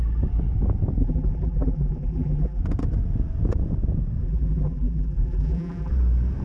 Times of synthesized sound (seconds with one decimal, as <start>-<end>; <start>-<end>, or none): 1.0-2.6; 4.2-5.9